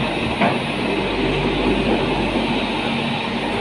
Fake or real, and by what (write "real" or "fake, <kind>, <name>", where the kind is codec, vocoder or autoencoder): real